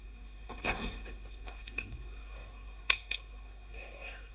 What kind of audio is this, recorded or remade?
remade